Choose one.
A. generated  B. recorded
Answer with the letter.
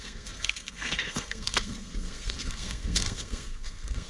A